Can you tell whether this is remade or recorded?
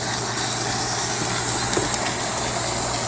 recorded